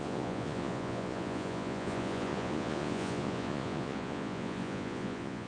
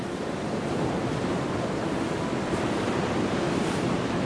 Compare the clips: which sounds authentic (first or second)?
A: second